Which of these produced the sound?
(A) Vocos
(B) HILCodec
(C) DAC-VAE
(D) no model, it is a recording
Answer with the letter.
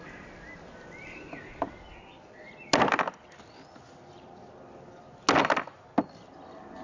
D